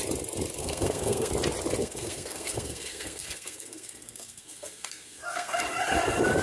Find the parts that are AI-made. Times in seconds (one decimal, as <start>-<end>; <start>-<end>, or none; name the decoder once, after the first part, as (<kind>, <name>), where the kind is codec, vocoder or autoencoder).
0.6-1.3 (codec, SNAC); 1.8-5.6